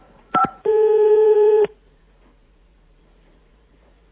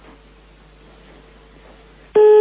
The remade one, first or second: first